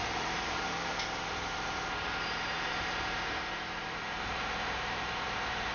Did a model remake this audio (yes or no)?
yes